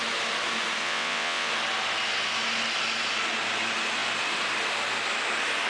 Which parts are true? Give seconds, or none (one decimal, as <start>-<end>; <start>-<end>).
0.0-0.8; 1.5-5.7